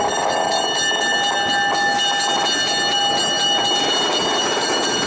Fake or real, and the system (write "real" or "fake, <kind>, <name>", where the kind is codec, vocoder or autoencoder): real